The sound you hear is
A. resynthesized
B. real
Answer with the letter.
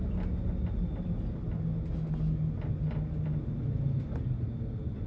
B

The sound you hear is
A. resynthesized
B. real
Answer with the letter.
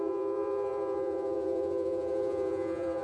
A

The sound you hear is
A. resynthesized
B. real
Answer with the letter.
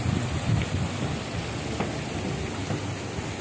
B